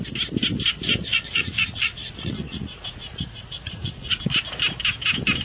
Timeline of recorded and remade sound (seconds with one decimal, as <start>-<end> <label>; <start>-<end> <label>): 0.0-1.0 recorded; 1.0-4.2 remade; 4.2-5.4 recorded